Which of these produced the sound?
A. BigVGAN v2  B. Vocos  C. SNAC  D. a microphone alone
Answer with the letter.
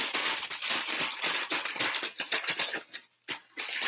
D